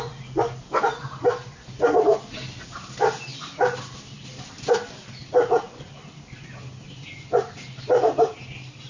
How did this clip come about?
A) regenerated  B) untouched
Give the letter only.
B